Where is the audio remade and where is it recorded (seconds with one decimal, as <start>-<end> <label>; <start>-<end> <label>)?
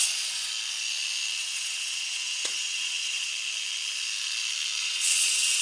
0.0-0.5 remade; 0.5-1.4 recorded; 1.4-3.3 remade; 3.3-4.8 recorded; 4.8-5.6 remade